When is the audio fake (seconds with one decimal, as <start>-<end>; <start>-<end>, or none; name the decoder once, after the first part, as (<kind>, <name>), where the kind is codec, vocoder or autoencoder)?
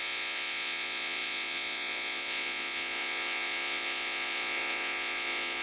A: 0.0-5.6 (vocoder, Vocos)